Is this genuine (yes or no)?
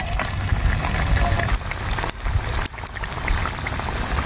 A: yes